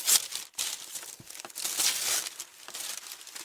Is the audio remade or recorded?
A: recorded